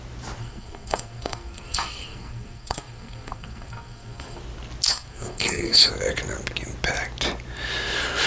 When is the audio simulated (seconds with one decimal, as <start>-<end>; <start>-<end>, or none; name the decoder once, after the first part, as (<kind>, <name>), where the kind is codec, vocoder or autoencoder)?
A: 0.4-4.4 (codec, SNAC); 4.9-5.9